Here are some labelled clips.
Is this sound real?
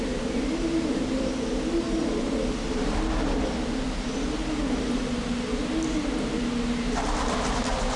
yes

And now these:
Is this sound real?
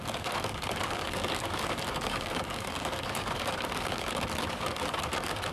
no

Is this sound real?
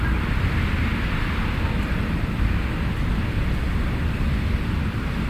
yes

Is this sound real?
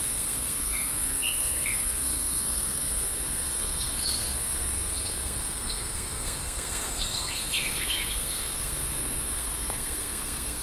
no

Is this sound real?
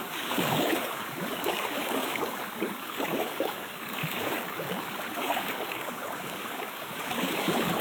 no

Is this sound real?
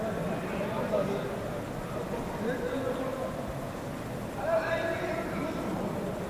yes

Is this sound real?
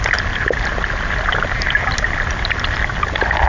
yes